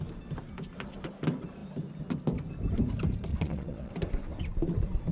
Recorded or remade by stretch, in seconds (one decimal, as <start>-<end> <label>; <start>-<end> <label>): 0.0-3.3 recorded; 3.3-3.9 remade; 3.9-5.1 recorded